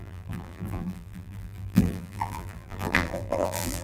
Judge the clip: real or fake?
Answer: fake